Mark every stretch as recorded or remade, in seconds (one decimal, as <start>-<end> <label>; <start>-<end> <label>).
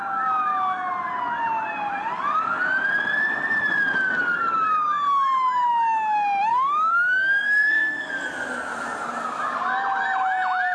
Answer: 0.0-6.5 recorded; 6.5-8.1 remade; 8.1-10.7 recorded